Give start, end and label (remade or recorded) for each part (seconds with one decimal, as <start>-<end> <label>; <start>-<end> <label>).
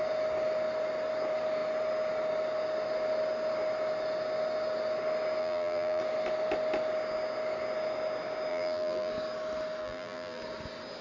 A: 0.0-5.4 recorded; 5.4-6.0 remade; 6.0-8.5 recorded; 8.5-9.1 remade; 9.1-9.8 recorded; 9.8-10.4 remade; 10.4-11.0 recorded